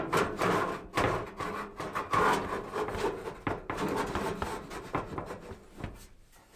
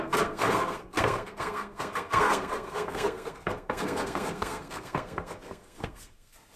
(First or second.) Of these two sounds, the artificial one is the second